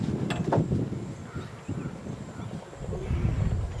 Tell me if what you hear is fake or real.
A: real